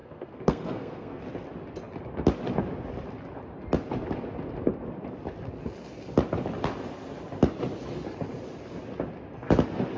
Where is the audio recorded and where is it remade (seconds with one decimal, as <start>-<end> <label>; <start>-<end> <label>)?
0.0-1.2 remade; 1.2-10.0 recorded